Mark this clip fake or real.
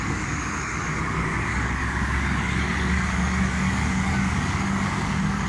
fake